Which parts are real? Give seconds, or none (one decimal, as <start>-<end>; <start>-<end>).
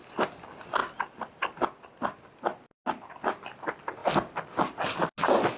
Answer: 0.0-5.6